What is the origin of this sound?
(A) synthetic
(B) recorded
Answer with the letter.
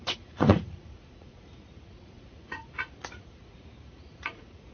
A